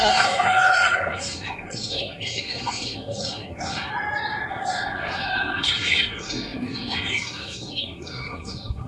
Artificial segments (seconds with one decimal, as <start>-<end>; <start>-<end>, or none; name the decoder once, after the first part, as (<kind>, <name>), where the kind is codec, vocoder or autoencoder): 0.0-3.9 (codec, SNAC); 4.5-8.9